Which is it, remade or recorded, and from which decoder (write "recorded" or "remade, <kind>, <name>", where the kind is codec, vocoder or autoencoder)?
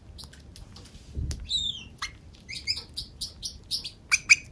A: recorded